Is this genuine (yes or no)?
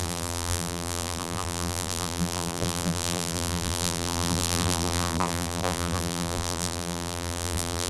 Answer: no